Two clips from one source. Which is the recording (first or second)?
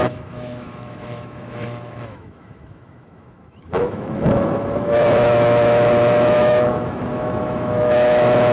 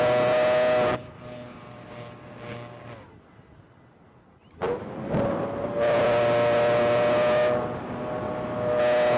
second